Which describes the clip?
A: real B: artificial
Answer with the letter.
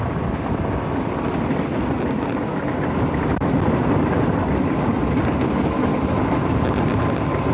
A